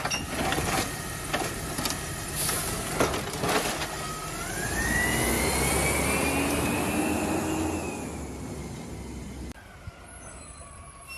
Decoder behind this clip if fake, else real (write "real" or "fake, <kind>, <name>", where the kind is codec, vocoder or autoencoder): real